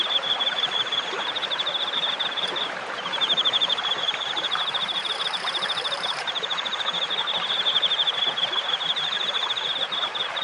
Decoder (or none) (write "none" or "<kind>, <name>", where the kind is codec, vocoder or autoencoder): vocoder, BigVGAN v2